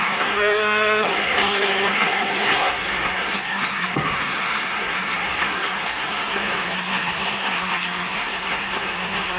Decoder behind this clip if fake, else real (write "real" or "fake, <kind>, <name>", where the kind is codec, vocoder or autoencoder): fake, codec, SNAC